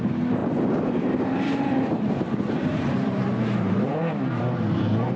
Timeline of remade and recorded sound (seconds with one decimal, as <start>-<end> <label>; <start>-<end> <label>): 0.0-0.4 remade; 0.4-1.2 recorded; 1.2-4.0 remade; 4.0-5.2 recorded

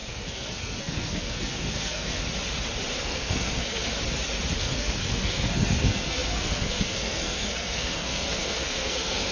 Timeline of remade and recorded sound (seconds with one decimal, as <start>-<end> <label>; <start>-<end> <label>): 0.0-2.2 remade; 2.2-3.0 recorded; 3.0-3.9 remade; 3.9-4.6 recorded; 4.6-9.3 remade